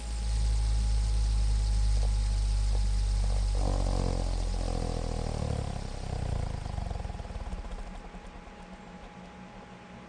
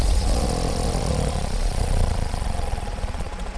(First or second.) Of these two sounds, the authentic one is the first